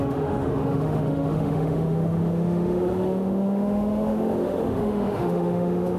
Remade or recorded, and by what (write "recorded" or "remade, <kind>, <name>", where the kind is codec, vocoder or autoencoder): remade, autoencoder, DAC-VAE